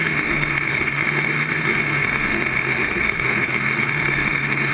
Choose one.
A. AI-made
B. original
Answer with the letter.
A